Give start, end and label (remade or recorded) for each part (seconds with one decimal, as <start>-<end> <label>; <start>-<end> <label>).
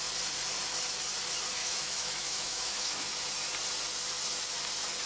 0.0-1.6 recorded; 1.6-3.1 remade; 3.1-5.1 recorded